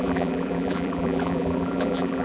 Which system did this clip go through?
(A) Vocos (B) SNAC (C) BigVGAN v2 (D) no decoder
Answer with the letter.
C